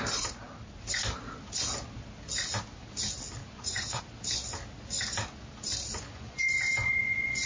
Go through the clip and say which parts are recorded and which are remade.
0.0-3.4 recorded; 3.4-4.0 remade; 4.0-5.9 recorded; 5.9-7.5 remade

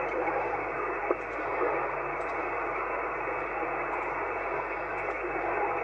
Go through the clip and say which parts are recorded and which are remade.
0.0-5.8 recorded

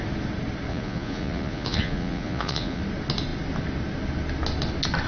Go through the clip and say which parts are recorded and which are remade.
0.0-0.7 recorded; 0.7-2.8 remade; 2.8-5.1 recorded

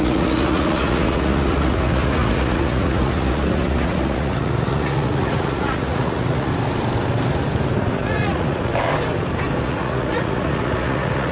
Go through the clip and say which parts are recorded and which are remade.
0.0-6.5 remade; 6.5-7.8 recorded; 7.8-8.7 remade; 8.7-9.6 recorded; 9.6-11.3 remade

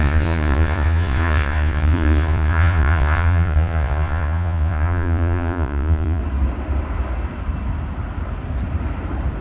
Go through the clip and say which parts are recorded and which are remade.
0.0-6.2 remade; 6.2-9.4 recorded